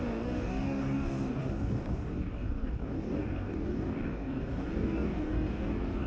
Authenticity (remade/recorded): remade